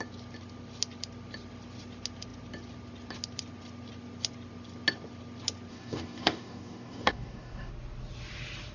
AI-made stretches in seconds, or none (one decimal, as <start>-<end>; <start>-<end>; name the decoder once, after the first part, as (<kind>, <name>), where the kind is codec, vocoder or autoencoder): 5.7-7.7 (codec, DAC)